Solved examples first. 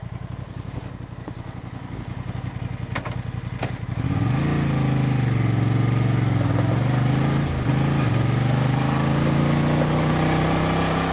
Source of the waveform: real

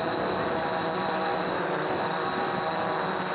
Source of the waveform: fake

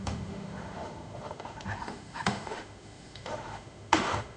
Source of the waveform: fake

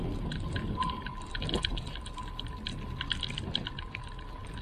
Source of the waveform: real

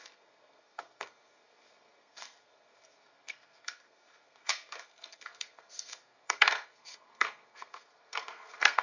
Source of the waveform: fake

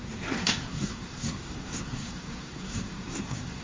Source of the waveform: fake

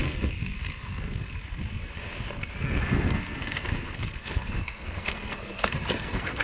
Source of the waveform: fake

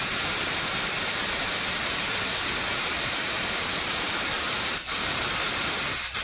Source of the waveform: fake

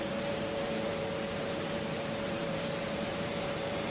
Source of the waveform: fake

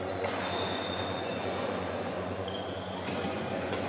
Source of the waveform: fake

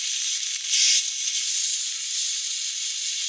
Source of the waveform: real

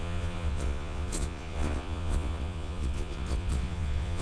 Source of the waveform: fake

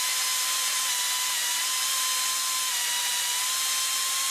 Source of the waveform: real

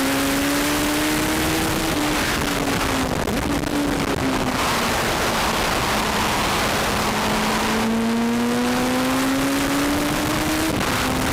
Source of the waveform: real